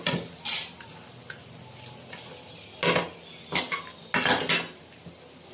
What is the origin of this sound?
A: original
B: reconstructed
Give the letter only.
A